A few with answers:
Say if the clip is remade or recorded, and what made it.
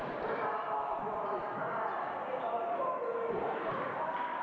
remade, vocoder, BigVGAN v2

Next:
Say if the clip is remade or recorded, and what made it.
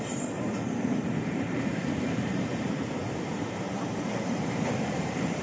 remade, vocoder, BigVGAN v2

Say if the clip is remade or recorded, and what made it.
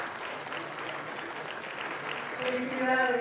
recorded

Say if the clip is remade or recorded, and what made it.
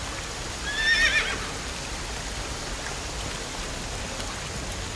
recorded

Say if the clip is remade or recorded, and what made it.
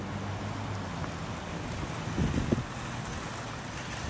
recorded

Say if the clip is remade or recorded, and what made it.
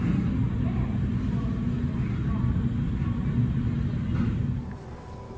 recorded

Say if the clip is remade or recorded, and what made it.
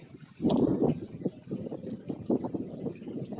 remade, vocoder, BigVGAN v2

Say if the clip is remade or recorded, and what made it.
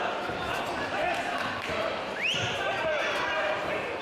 remade, vocoder, BigVGAN v2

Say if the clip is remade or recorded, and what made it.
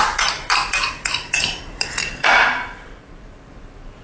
remade, vocoder, BigVGAN v2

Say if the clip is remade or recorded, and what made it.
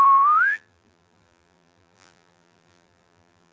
remade, vocoder, BigVGAN v2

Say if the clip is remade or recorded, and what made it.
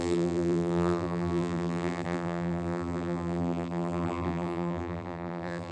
remade, vocoder, BigVGAN v2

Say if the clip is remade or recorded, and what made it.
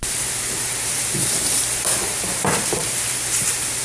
remade, vocoder, BigVGAN v2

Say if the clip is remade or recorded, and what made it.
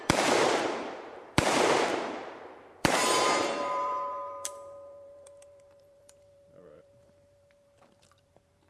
remade, vocoder, BigVGAN v2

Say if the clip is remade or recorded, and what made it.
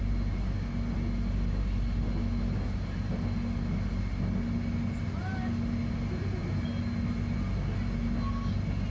recorded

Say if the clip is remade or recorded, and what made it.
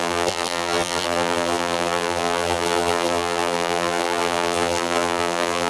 remade, vocoder, BigVGAN v2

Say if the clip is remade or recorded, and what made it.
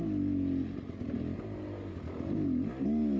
recorded